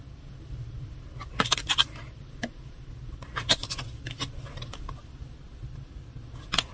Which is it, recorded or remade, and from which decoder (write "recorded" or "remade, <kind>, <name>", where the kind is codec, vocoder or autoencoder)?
recorded